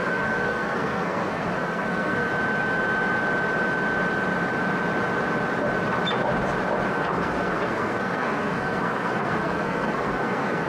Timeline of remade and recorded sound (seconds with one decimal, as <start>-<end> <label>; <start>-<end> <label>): 0.0-2.3 remade; 2.3-6.9 recorded; 6.9-10.7 remade